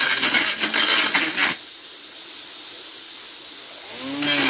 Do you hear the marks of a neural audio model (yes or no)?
no